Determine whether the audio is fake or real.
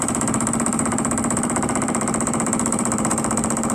fake